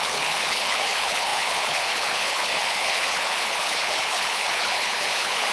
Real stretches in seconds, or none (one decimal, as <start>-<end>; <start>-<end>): none